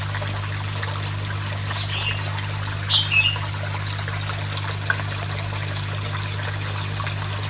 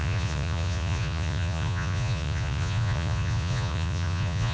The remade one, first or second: second